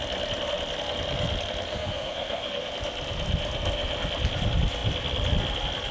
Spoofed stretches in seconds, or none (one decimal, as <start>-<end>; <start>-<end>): 1.7-2.7